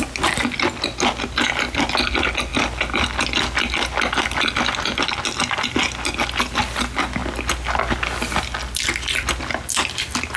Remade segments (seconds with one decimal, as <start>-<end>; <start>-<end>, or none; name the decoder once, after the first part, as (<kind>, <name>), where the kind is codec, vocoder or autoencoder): none